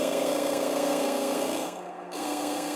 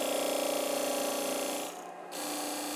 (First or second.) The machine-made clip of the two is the first